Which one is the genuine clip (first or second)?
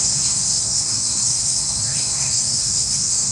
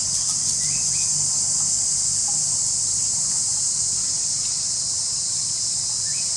second